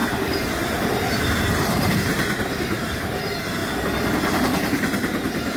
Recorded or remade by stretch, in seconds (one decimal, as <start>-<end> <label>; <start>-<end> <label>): 0.0-3.6 remade; 3.6-5.6 recorded